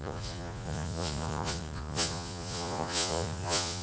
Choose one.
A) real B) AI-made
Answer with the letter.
B